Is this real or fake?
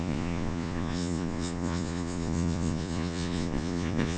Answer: fake